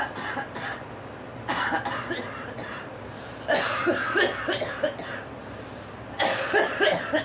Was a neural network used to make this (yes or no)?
yes